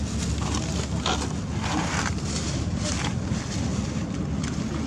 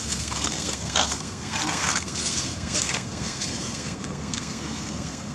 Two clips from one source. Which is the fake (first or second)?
second